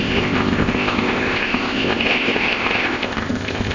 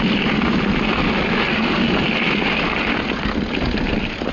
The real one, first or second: second